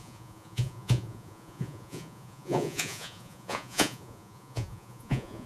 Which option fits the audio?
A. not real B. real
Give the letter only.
A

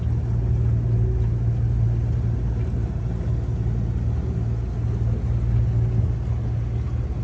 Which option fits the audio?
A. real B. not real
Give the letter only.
A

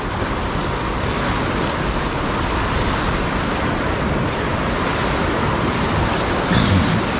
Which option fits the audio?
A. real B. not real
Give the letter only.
A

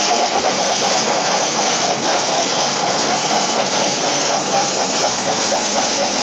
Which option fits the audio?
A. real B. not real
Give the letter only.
B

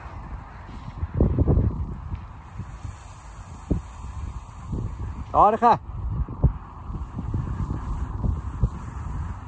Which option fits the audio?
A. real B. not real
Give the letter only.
A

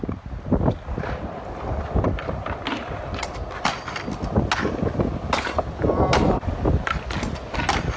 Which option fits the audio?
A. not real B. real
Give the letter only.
B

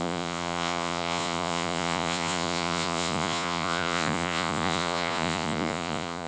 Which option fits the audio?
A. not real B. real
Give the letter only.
A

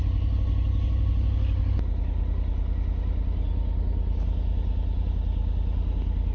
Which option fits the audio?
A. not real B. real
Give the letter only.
B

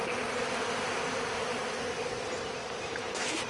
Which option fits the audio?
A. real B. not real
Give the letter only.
A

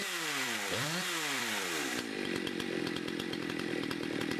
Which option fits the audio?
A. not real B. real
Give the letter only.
A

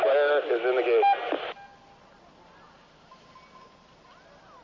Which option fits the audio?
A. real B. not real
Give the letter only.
A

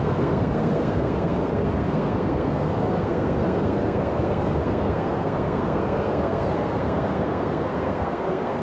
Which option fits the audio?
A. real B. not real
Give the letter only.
B